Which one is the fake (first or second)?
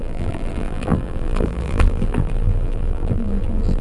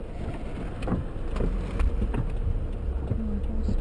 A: first